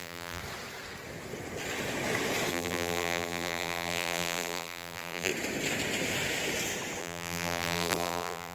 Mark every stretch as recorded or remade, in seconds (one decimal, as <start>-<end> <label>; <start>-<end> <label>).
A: 0.0-0.4 remade; 0.4-2.5 recorded; 2.5-5.3 remade; 5.3-7.0 recorded; 7.0-8.5 remade